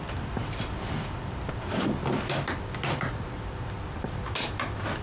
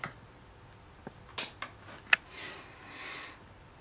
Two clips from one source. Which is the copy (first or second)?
first